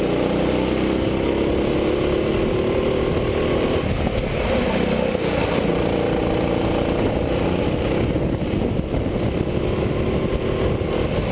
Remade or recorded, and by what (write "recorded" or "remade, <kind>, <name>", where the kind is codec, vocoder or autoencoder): recorded